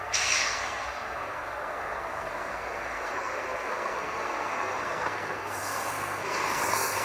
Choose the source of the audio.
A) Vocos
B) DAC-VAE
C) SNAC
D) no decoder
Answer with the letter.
C